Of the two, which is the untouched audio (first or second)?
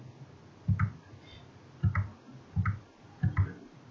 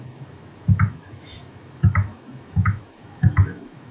first